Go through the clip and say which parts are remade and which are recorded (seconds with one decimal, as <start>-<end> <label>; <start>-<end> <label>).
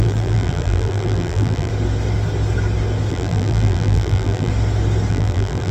0.0-1.7 remade; 1.7-3.1 recorded; 3.1-4.5 remade; 4.5-5.1 recorded; 5.1-5.7 remade